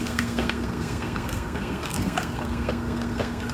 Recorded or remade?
remade